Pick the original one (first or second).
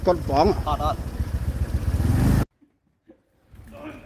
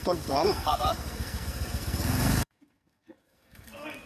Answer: first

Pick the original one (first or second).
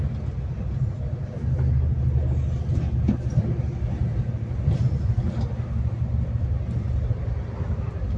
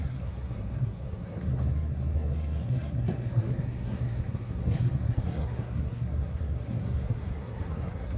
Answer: first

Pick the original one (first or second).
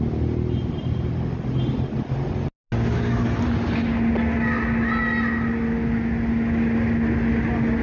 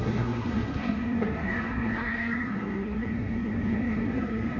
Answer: first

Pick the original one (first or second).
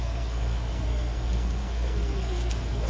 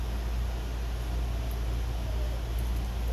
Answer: second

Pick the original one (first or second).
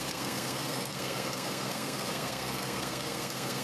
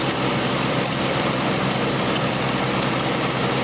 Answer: second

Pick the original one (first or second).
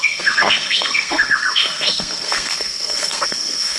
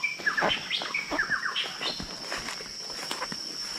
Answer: second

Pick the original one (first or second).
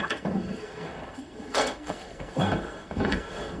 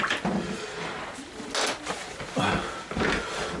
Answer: second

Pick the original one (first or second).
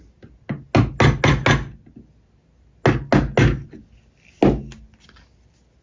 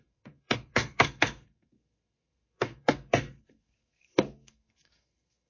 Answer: first